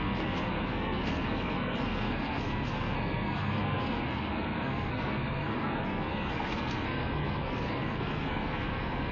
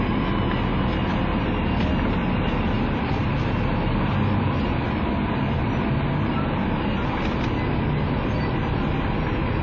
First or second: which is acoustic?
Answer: second